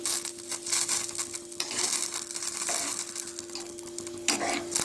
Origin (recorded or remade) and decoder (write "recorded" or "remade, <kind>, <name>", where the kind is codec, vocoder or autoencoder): recorded